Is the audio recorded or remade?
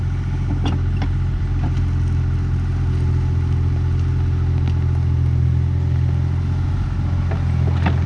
recorded